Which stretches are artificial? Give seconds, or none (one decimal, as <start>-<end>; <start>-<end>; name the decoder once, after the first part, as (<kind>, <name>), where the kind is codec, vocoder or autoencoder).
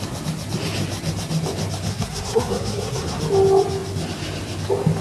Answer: 1.9-3.2 (codec, SNAC)